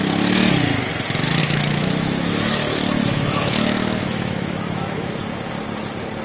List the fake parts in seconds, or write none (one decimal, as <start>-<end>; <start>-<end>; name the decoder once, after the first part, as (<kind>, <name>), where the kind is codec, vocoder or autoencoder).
1.4-5.1 (autoencoder, DAC-VAE)